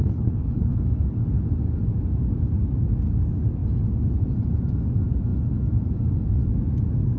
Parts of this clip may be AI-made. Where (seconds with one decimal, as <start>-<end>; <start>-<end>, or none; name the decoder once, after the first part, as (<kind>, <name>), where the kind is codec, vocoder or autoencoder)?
0.0-0.8 (codec, HILCodec)